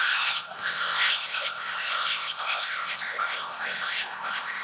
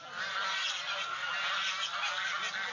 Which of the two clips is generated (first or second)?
first